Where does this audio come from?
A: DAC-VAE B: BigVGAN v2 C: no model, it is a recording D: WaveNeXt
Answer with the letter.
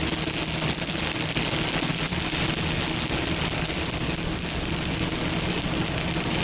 C